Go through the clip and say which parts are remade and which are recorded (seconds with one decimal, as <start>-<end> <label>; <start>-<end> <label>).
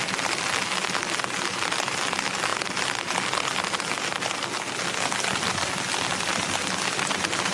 0.0-7.5 recorded